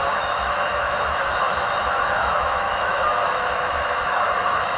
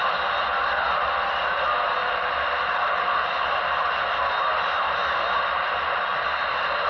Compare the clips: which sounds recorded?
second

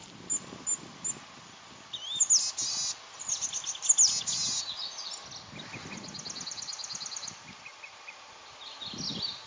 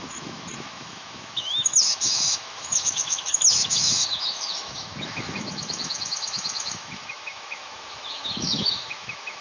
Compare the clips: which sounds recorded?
first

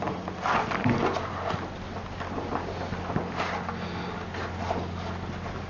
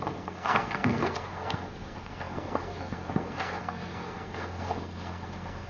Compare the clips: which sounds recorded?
first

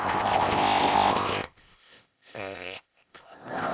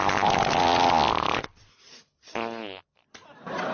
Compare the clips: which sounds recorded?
second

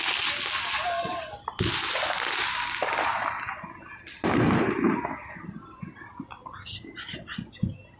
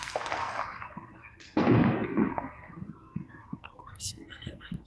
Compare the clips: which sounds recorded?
first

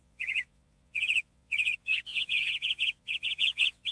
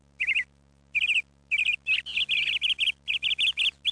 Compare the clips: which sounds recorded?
second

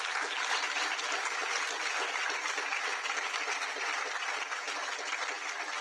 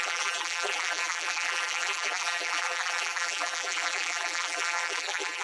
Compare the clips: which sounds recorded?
first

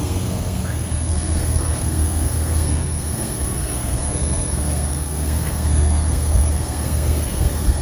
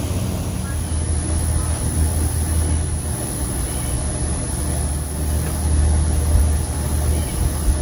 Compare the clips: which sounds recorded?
second